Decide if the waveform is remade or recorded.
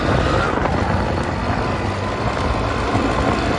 recorded